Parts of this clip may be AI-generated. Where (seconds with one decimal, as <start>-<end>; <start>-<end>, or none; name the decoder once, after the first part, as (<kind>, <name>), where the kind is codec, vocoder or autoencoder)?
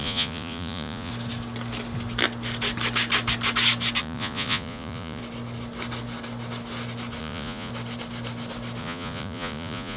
0.0-1.1 (vocoder, Vocos); 4.0-5.2; 7.2-7.7; 8.8-10.0